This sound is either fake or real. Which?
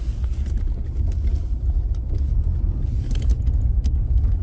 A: real